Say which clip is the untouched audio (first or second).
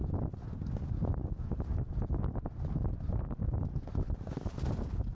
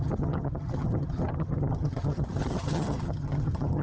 first